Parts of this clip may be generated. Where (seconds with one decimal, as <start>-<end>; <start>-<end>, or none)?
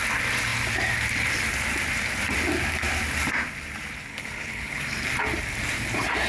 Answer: 4.1-4.8